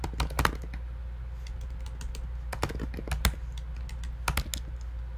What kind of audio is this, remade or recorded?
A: recorded